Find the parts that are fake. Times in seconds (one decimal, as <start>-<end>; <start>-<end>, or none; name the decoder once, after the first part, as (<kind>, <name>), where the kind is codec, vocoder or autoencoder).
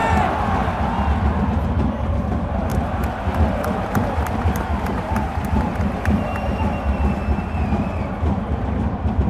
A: 1.9-2.7 (vocoder, BigVGAN v2); 4.0-7.2; 8.0-9.3